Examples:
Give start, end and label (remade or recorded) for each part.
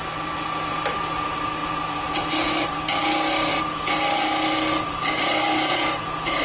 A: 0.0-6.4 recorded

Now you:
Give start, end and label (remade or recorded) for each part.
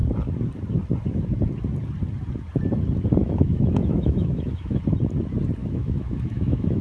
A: 0.0-3.2 recorded; 3.2-4.8 remade; 4.8-5.6 recorded; 5.6-6.8 remade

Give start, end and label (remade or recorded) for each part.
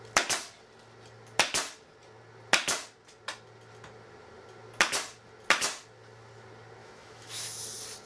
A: 0.0-6.8 recorded; 6.8-7.6 remade; 7.6-8.1 recorded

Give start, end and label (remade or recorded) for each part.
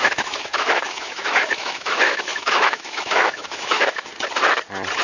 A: 0.0-4.1 remade; 4.1-5.0 recorded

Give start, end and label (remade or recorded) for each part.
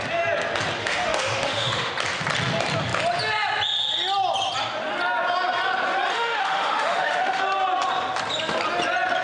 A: 0.0-0.8 recorded; 0.8-1.9 remade; 1.9-6.1 recorded; 6.1-7.4 remade; 7.4-9.2 recorded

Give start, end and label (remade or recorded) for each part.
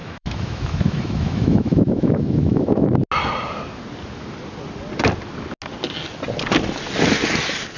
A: 0.0-2.9 remade; 2.9-7.8 recorded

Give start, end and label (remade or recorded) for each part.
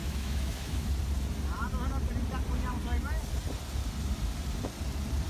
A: 0.0-0.9 remade; 0.9-5.3 recorded